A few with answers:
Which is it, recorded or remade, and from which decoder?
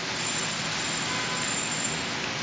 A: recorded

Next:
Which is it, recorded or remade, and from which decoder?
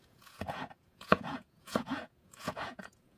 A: remade, vocoder, Vocos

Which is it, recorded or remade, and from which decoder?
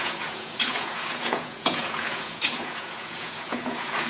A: remade, vocoder, Vocos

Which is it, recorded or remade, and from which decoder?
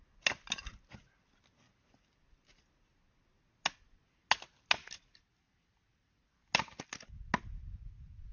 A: recorded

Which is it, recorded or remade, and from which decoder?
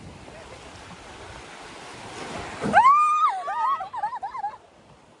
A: recorded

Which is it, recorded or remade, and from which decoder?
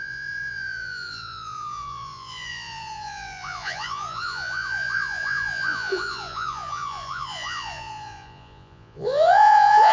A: remade, vocoder, Vocos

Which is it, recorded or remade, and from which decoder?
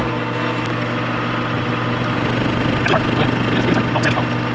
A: recorded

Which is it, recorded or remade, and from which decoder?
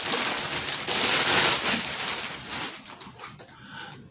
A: recorded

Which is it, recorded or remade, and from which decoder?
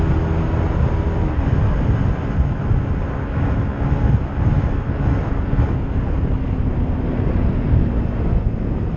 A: recorded